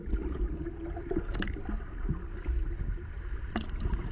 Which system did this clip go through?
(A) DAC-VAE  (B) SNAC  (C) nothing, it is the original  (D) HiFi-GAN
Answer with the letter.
C